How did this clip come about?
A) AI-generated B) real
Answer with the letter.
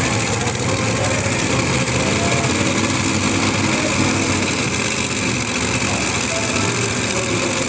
B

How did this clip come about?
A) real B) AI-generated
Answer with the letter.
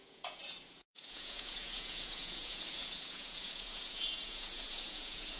B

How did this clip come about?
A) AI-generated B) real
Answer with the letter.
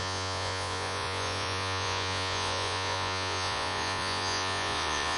A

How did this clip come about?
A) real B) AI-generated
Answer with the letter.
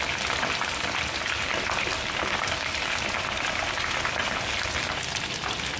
A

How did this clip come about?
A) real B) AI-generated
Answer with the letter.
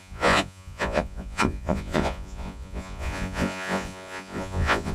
B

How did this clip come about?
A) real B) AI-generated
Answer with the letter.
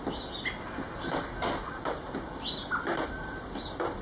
A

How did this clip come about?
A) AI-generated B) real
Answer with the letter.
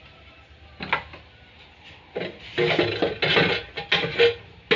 B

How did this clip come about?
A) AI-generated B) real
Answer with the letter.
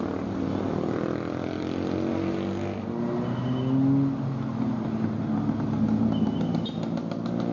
B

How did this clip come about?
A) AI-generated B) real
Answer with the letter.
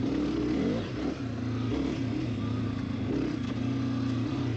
B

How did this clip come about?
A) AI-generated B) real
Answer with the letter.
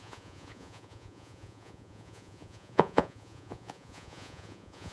A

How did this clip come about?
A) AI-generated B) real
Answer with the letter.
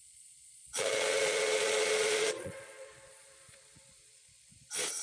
A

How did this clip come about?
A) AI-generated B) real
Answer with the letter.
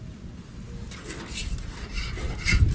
B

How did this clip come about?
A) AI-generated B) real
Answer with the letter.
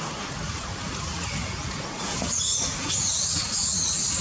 A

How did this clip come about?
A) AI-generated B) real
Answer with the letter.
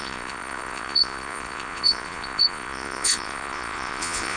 A